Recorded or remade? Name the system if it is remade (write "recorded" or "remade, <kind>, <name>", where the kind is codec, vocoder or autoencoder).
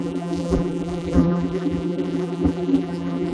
remade, vocoder, BigVGAN v2